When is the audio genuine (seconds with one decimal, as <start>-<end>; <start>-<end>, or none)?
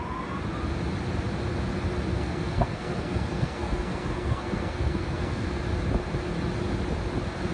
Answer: 0.0-2.1; 5.6-7.5